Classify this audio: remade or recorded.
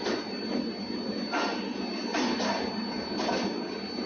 recorded